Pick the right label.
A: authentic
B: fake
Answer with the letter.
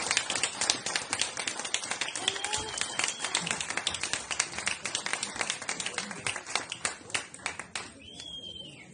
A